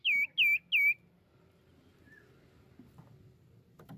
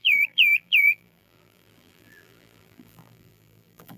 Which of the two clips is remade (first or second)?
second